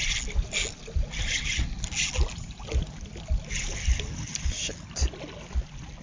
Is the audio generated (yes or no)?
no